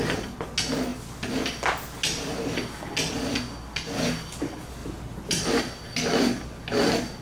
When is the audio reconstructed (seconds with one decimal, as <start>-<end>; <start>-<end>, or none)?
4.8-5.6

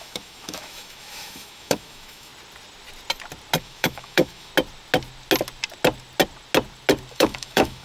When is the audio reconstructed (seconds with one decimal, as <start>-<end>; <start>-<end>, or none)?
0.0-2.3; 3.6-4.5; 7.1-7.8